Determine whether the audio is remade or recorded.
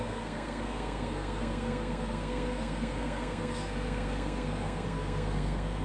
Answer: remade